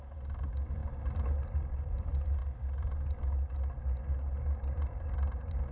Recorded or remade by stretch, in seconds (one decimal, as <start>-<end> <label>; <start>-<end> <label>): 0.0-2.4 remade; 2.4-4.1 recorded; 4.1-5.7 remade